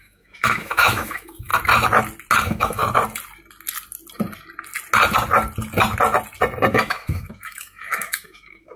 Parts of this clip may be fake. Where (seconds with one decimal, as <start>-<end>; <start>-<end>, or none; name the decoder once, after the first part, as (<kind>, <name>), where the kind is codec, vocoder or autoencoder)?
0.0-1.5 (autoencoder, DAC-VAE); 2.4-2.8; 6.7-8.8